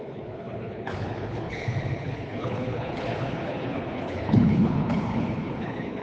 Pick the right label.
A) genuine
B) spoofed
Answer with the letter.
B